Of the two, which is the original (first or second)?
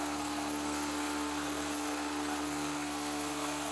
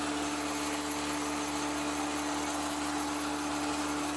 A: second